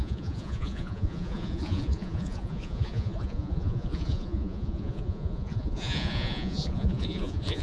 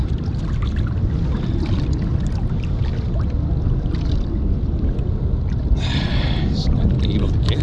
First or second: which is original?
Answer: second